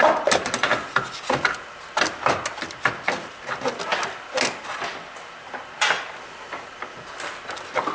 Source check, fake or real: real